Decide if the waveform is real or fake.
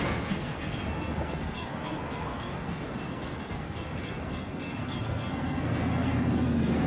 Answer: fake